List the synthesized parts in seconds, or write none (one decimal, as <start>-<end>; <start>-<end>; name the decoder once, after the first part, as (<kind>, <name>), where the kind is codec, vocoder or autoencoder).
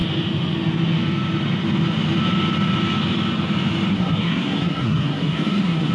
3.9-5.9 (codec, SNAC)